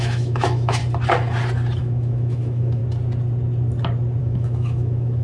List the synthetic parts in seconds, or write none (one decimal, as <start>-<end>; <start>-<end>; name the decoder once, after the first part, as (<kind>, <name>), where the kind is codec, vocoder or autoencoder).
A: 0.0-0.8 (autoencoder, DAC-VAE); 1.8-2.8; 4.2-5.2